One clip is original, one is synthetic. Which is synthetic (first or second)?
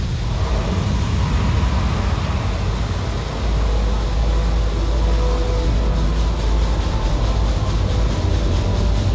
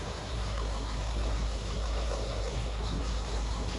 second